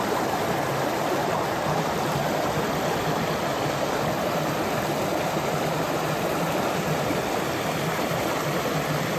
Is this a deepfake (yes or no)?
no